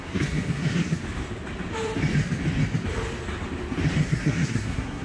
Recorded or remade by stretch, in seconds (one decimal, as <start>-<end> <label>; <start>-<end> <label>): 0.0-1.0 remade; 1.0-4.0 recorded; 4.0-5.0 remade